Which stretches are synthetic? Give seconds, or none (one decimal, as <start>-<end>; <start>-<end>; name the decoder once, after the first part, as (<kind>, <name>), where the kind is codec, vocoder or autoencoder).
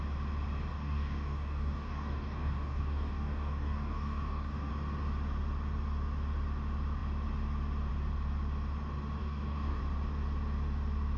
0.7-4.7 (codec, DAC); 9.2-9.8